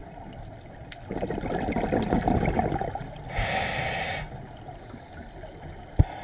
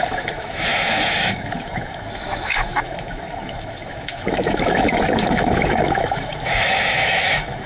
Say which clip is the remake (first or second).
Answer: second